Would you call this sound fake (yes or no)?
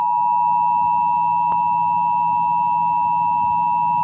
no